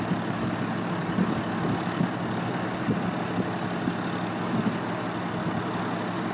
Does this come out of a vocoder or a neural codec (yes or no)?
no